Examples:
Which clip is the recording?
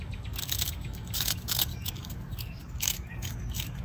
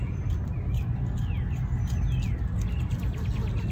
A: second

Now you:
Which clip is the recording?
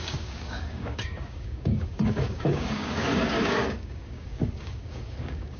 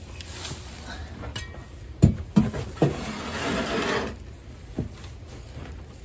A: second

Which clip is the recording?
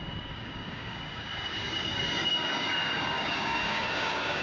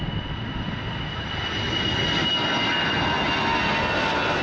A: second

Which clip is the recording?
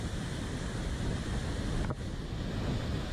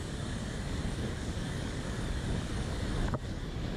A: first